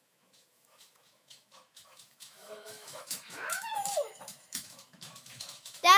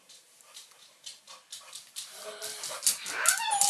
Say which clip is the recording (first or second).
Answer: second